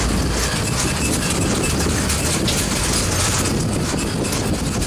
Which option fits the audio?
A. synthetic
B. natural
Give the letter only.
B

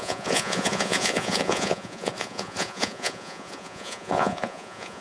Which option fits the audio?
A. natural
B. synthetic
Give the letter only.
B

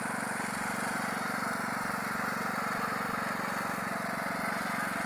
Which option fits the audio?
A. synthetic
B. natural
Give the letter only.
B